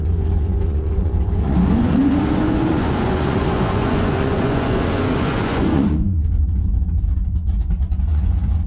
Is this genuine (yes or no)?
no